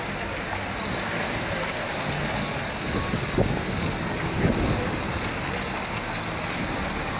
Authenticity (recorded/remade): recorded